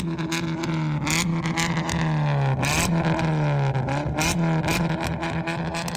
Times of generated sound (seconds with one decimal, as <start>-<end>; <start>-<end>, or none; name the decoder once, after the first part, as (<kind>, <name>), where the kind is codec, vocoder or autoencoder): none